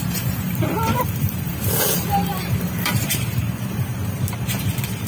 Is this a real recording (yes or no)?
no